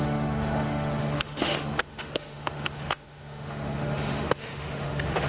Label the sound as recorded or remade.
remade